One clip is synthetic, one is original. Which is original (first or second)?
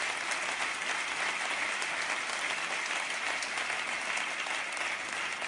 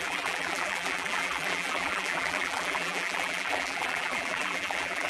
first